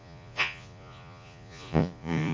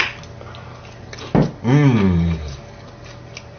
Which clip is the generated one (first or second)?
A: first